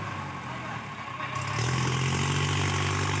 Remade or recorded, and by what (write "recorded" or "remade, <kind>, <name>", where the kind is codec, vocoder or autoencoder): recorded